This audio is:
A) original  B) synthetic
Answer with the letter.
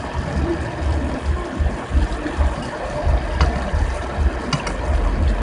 A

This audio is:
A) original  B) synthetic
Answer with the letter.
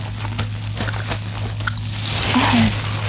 A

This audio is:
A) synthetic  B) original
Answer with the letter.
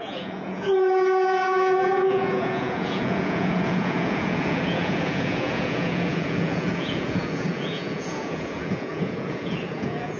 A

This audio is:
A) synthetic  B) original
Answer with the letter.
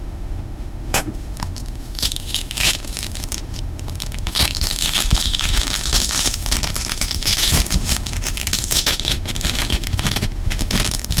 A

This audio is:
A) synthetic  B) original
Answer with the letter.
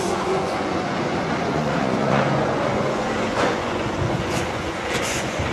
A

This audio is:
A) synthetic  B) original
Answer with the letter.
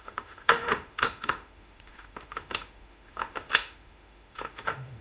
A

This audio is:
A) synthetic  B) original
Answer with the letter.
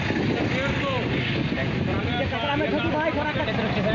B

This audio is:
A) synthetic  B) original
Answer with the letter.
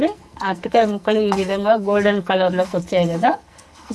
A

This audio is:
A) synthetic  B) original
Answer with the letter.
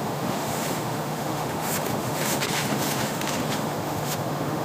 A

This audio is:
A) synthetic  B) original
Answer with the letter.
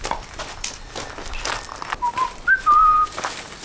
B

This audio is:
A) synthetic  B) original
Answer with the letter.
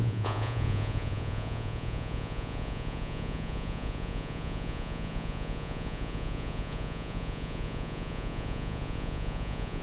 A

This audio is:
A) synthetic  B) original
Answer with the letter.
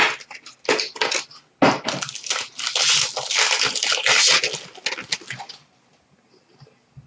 B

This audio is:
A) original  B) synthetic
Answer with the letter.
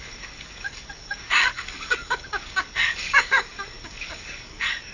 B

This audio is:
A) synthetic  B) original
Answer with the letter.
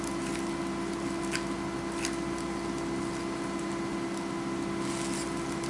B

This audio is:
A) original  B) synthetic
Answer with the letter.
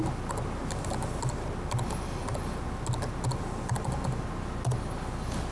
A